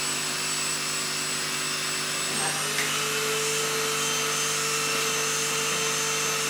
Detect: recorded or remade recorded